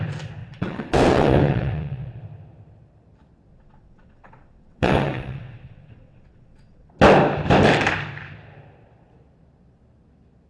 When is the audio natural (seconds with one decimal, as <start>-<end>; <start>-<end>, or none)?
0.0-0.4; 2.2-3.5; 6.9-10.5